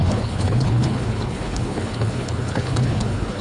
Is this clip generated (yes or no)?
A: yes